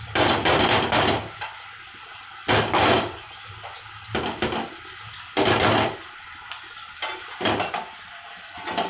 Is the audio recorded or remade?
recorded